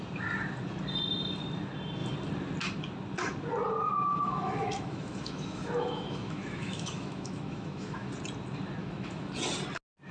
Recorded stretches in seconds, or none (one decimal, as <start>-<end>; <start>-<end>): 0.0-4.1; 8.1-8.8; 9.3-10.1